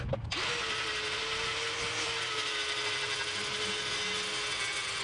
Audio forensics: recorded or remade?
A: recorded